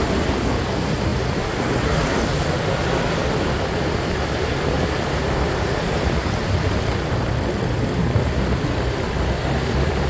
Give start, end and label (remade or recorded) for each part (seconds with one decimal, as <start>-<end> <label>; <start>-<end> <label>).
0.0-10.1 recorded